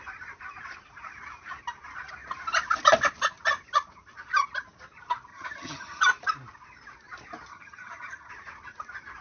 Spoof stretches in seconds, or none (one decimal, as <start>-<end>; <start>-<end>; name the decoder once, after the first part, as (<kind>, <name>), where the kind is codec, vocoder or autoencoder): 5.3-6.0 (vocoder, HiFi-GAN); 7.5-8.3